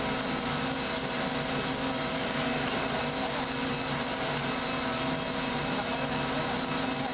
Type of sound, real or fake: real